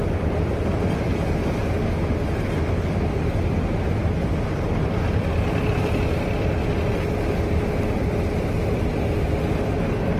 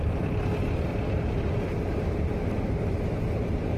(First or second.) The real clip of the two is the first